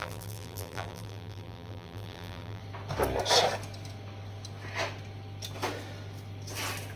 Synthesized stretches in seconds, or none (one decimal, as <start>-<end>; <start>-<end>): 0.0-2.6